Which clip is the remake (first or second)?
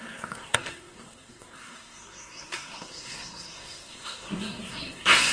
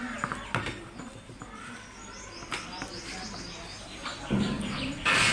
first